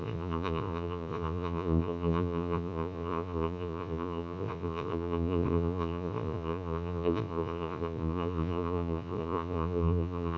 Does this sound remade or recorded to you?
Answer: remade